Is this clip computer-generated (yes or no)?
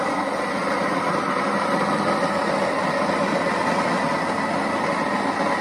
no